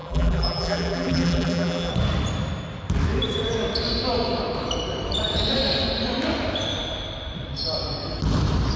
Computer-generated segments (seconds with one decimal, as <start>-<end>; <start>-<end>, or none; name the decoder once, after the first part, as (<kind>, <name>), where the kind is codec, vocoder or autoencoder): 0.0-1.9 (vocoder, BigVGAN v2)